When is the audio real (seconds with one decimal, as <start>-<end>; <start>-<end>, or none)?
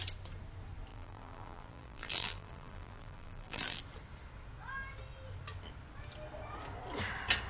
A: 0.0-0.9; 3.8-7.5